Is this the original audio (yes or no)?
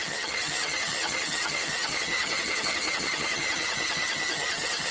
no